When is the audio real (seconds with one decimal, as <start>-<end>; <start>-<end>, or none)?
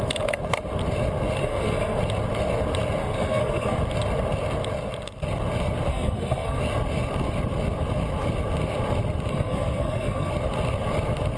0.0-1.4; 2.0-3.0; 3.8-5.9; 6.6-9.3; 10.3-11.4